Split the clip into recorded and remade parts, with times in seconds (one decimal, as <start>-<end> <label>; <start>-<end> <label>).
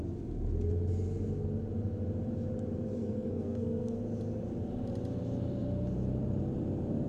0.0-3.0 recorded; 3.0-4.0 remade; 4.0-7.1 recorded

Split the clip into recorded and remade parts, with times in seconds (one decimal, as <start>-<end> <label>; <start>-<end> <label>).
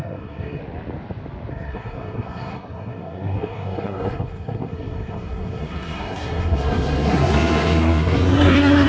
0.0-0.6 remade; 0.6-1.5 recorded; 1.5-8.9 remade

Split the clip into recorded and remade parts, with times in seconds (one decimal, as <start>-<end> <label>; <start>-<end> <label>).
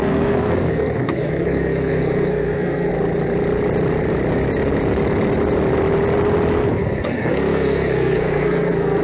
0.0-2.9 remade; 2.9-6.6 recorded; 6.6-9.0 remade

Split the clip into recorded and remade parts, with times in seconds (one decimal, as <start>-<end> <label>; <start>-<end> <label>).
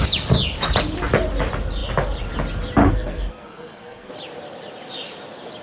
0.0-2.8 recorded; 2.8-4.1 remade; 4.1-5.6 recorded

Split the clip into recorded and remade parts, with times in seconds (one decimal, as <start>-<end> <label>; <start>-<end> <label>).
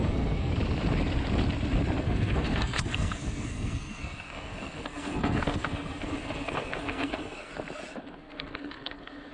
0.0-0.5 remade; 0.5-2.0 recorded; 2.0-7.5 remade; 7.5-8.0 recorded; 8.0-9.3 remade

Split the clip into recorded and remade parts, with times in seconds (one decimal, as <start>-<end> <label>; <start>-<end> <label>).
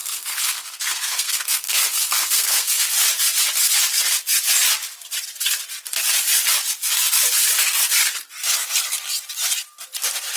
0.0-2.9 remade; 2.9-10.4 recorded